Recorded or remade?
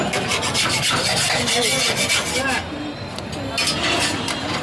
recorded